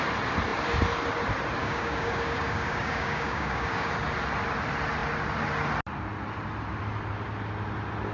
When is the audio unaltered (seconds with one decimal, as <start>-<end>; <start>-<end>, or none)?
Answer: 0.0-1.6; 3.9-8.1